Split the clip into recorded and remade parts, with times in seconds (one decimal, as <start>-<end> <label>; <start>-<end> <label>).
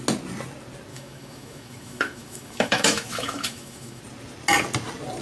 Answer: 0.0-0.9 recorded; 0.9-4.0 remade; 4.0-5.2 recorded